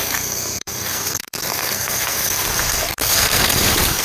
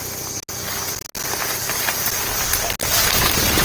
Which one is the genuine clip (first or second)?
second